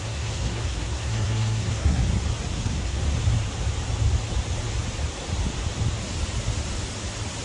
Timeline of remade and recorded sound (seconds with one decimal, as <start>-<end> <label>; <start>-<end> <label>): 0.0-2.0 remade; 2.0-2.5 recorded; 2.5-3.0 remade; 3.0-7.4 recorded